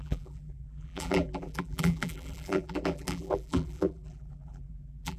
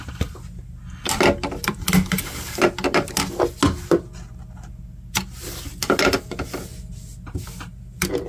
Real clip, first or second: second